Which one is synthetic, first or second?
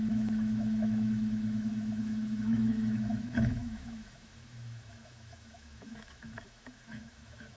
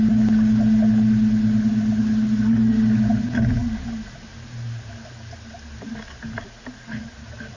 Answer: first